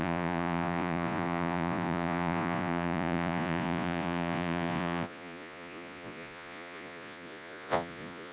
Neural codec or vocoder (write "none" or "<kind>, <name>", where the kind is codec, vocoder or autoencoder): vocoder, Vocos